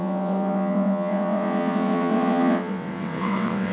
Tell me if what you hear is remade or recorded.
remade